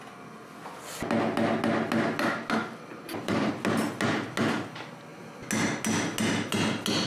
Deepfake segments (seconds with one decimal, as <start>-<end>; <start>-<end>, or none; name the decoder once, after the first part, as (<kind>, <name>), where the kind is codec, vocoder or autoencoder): 2.9-3.5 (vocoder, BigVGAN v2)

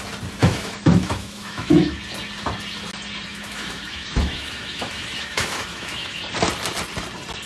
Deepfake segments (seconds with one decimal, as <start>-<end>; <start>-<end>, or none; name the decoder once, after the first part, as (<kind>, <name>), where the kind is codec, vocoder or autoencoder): 0.4-1.9 (autoencoder, DAC-VAE); 3.3-6.2

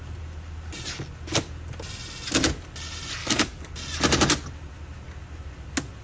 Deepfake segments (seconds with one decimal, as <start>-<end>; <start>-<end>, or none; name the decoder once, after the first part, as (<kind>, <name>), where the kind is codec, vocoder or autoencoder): 3.2-3.7 (codec, DAC)

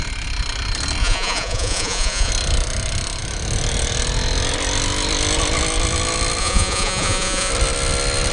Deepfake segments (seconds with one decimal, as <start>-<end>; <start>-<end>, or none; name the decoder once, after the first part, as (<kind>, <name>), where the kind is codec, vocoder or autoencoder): 1.0-2.3 (vocoder, Vocos); 6.4-7.5